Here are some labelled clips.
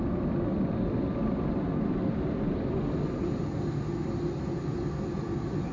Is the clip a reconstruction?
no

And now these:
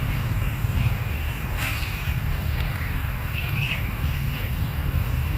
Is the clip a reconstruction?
yes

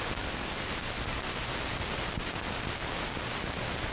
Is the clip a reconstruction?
no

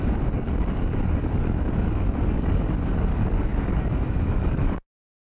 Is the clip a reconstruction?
yes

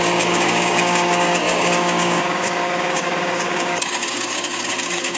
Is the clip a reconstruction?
yes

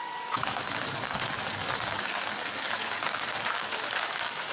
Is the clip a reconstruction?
yes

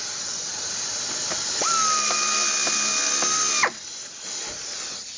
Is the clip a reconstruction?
no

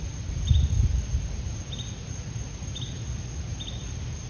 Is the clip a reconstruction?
no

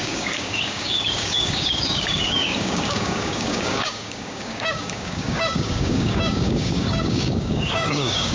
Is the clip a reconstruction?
yes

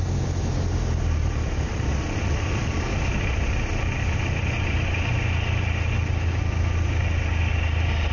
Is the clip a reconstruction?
no